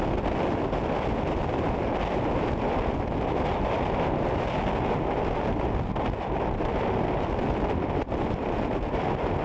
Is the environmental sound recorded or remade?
recorded